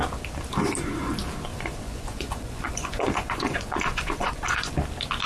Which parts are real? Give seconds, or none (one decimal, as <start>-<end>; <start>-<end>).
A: 0.0-1.5; 4.7-5.3